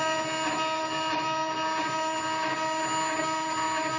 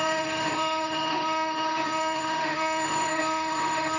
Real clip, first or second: first